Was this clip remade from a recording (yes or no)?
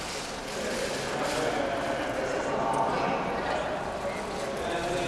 no